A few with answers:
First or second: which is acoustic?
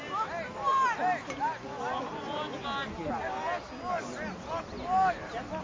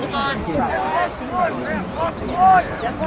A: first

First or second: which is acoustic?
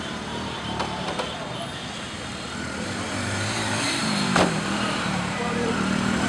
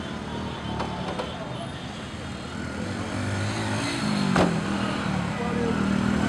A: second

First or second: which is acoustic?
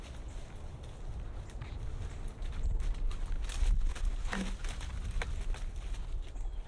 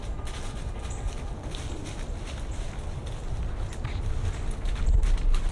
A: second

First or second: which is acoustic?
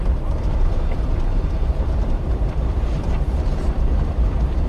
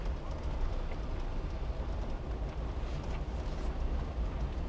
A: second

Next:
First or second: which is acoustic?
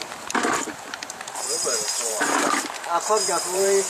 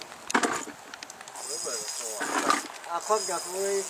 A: second